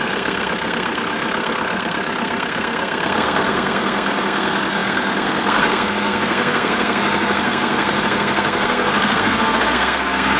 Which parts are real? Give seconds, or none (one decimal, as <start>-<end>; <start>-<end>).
none